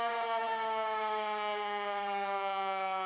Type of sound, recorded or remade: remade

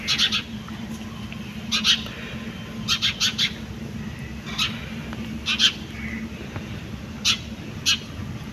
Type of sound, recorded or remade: recorded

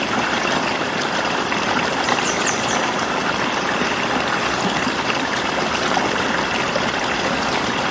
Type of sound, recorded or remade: recorded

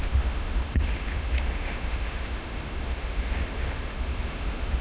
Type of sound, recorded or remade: remade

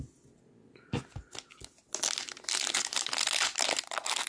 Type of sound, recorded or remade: recorded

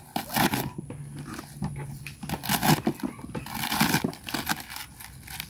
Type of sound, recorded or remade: recorded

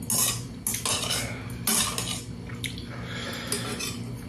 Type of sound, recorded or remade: recorded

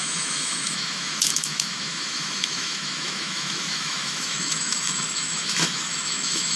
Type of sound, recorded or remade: remade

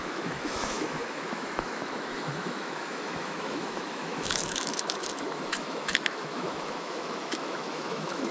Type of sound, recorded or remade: remade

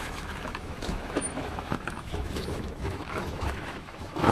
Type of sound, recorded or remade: remade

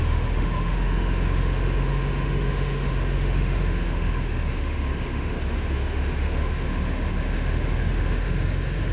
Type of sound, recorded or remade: remade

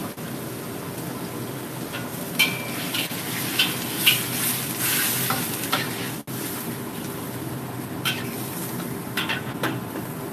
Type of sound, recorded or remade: recorded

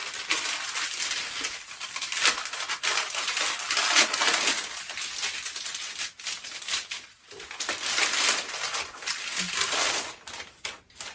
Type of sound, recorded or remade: recorded